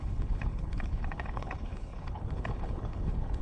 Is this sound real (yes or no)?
no